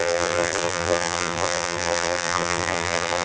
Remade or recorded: remade